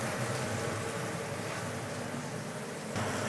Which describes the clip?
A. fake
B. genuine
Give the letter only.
B